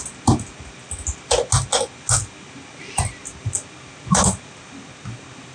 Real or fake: real